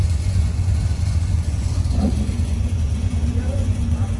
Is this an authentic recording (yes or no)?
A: no